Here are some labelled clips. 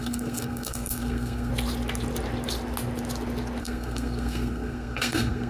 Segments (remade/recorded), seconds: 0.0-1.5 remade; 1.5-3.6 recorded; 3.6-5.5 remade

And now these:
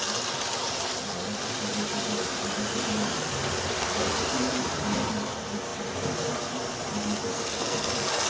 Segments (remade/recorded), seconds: 0.0-7.3 recorded; 7.3-7.9 remade; 7.9-8.3 recorded

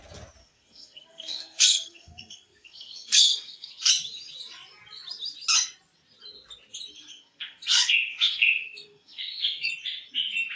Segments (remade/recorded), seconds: 0.0-0.4 recorded; 0.4-3.9 remade; 3.9-7.1 recorded; 7.1-9.7 remade; 9.7-10.6 recorded

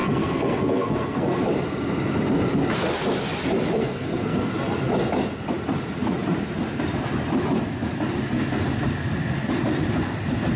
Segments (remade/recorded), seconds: 0.0-1.4 remade; 1.4-3.8 recorded; 3.8-4.5 remade; 4.5-10.6 recorded

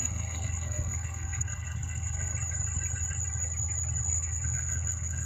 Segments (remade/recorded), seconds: 0.0-2.3 remade; 2.3-4.0 recorded; 4.0-5.2 remade

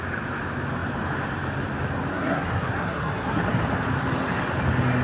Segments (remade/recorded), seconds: 0.0-2.1 recorded; 2.1-3.4 remade; 3.4-5.0 recorded